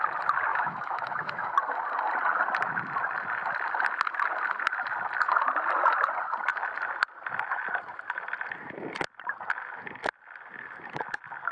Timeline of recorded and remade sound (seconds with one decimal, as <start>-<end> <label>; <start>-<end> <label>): 0.0-0.5 recorded; 0.5-1.5 remade; 1.5-11.5 recorded